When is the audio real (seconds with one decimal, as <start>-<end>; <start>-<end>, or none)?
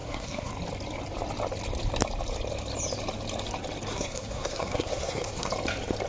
0.5-3.9; 5.5-6.1